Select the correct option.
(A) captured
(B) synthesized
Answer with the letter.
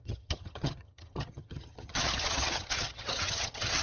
B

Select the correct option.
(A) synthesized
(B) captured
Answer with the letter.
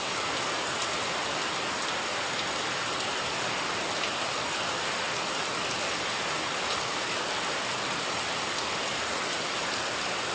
B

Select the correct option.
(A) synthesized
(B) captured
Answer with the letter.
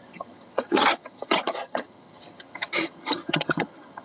A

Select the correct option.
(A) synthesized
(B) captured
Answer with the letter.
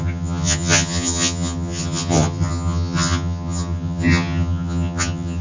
A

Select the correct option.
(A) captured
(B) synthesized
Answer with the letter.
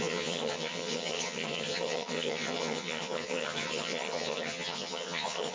B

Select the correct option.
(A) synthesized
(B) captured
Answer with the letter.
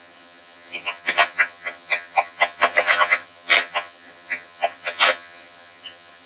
A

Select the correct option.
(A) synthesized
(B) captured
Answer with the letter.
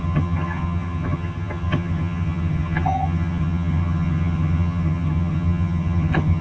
A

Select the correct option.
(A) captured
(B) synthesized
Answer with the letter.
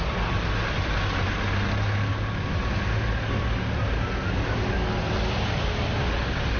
A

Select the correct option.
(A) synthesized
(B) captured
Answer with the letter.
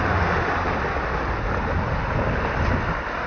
B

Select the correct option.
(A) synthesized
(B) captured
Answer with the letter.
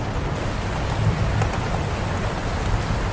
B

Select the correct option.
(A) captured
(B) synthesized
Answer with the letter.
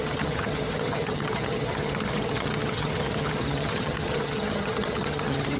B